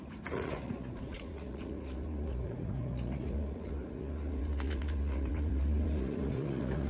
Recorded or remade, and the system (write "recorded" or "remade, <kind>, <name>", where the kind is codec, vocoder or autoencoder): remade, vocoder, Vocos